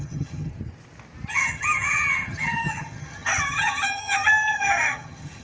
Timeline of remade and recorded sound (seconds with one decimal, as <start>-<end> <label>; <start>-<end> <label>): 0.0-0.5 remade; 0.5-1.3 recorded; 1.3-5.4 remade